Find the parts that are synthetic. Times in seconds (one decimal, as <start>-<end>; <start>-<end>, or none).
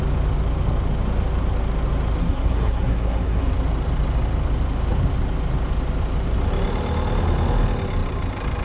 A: 2.2-3.4